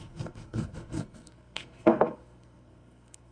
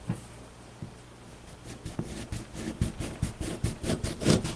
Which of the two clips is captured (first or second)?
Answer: second